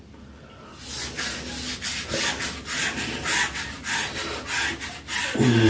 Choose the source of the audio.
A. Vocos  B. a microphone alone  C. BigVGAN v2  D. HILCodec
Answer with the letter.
B